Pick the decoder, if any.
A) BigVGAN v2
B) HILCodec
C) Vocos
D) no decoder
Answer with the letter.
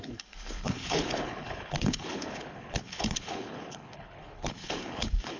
B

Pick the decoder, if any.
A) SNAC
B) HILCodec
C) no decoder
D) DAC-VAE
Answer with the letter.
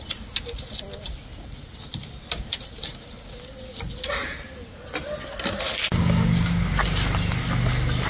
C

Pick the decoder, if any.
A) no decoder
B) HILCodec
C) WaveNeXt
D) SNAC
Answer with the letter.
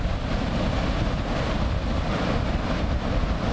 A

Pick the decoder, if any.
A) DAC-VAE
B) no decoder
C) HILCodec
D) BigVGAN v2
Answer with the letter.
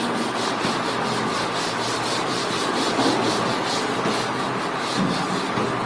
B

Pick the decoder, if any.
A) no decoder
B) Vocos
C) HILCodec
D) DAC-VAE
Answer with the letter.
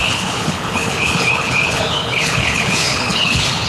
C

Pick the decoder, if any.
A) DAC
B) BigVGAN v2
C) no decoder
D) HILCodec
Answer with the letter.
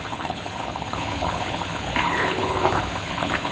D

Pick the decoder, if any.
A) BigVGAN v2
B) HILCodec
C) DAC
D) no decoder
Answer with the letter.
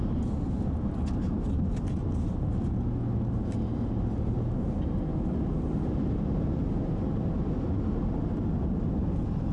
D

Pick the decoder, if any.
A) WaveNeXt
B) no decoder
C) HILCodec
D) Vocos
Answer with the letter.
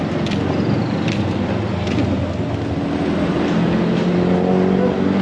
B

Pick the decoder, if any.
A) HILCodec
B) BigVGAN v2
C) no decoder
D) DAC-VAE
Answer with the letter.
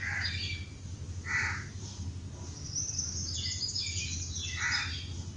C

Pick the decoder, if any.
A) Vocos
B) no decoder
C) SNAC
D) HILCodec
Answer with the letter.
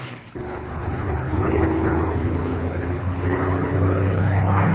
D